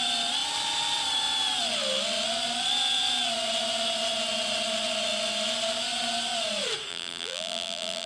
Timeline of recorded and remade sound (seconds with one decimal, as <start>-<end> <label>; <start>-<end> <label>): 0.0-6.9 recorded; 6.9-8.1 remade